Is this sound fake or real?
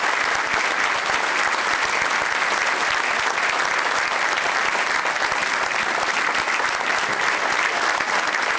real